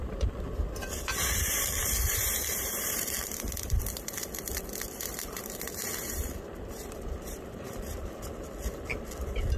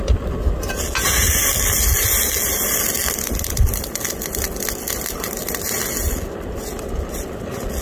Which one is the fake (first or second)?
first